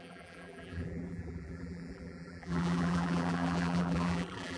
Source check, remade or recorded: remade